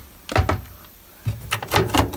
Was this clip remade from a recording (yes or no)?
no